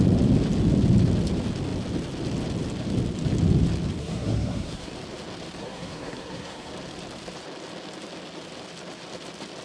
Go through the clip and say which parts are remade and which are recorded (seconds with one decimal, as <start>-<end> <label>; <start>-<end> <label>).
0.0-4.0 recorded; 4.0-4.9 remade; 4.9-5.6 recorded; 5.6-6.7 remade; 6.7-9.6 recorded